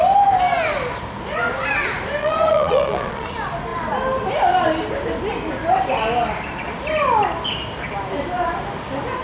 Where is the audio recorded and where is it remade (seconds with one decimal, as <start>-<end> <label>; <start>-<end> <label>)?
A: 0.0-2.2 recorded; 2.2-3.3 remade; 3.3-9.2 recorded